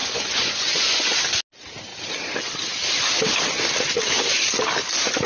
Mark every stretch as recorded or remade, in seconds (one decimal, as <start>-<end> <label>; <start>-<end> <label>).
0.0-1.2 remade; 1.2-5.3 recorded